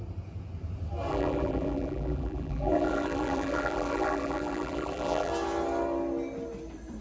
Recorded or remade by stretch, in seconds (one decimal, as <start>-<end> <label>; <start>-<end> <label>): 0.0-1.1 recorded; 1.1-5.3 remade; 5.3-7.0 recorded